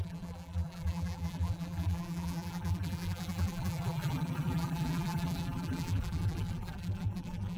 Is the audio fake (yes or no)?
yes